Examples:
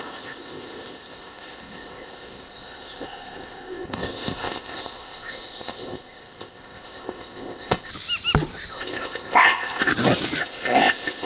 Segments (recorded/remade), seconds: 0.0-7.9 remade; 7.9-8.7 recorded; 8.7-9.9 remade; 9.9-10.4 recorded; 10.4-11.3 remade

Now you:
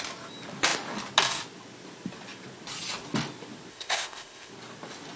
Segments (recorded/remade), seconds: 0.0-3.7 recorded; 3.7-4.5 remade; 4.5-5.2 recorded